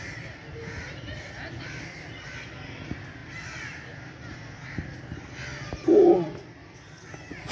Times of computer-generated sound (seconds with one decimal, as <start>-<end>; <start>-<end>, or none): none